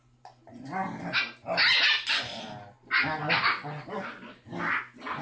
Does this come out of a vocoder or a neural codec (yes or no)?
no